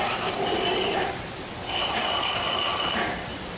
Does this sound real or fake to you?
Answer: real